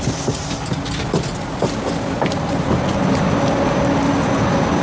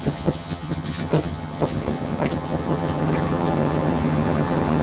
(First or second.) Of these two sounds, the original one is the first